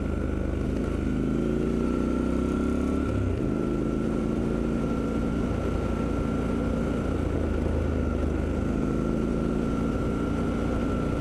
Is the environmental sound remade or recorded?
recorded